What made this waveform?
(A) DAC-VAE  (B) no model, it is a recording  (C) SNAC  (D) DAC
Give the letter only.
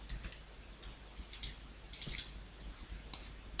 B